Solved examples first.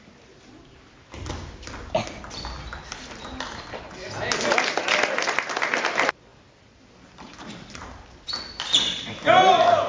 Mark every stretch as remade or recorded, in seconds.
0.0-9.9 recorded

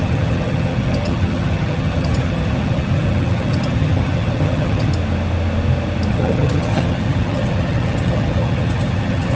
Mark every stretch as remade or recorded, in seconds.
0.0-4.9 remade; 4.9-6.1 recorded; 6.1-9.3 remade

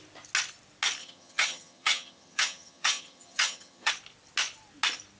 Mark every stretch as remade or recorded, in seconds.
0.0-1.0 recorded; 1.0-3.9 remade; 3.9-5.2 recorded

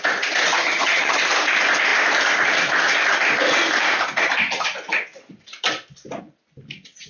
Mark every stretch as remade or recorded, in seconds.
0.0-0.5 recorded; 0.5-1.2 remade; 1.2-7.1 recorded

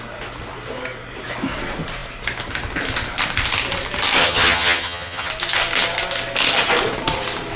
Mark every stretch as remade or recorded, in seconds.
0.0-4.2 recorded; 4.2-5.3 remade; 5.3-7.6 recorded

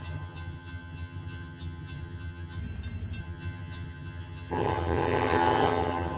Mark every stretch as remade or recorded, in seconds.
0.0-2.6 remade; 2.6-3.2 recorded; 3.2-6.2 remade

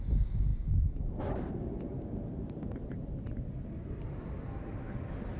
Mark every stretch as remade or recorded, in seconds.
0.0-5.4 recorded

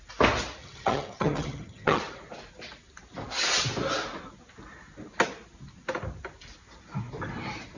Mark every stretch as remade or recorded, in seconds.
0.0-0.6 recorded; 0.6-2.0 remade; 2.0-7.8 recorded